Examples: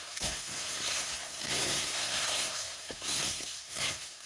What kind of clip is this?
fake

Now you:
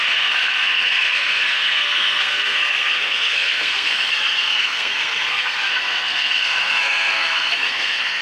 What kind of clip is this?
fake